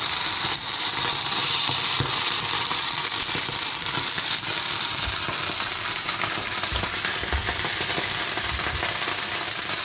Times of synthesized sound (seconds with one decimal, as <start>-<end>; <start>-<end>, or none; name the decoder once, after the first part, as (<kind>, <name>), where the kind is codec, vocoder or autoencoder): 0.0-9.8 (vocoder, BigVGAN v2)